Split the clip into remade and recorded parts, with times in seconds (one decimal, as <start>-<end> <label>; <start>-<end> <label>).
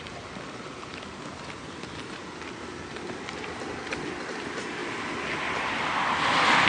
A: 0.0-6.7 recorded